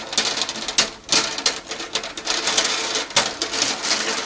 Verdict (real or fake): real